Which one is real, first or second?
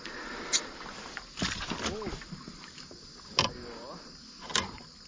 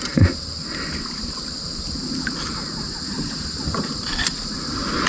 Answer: first